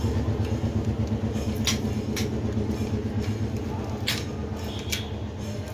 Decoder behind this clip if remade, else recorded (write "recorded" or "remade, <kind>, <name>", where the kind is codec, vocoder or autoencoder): recorded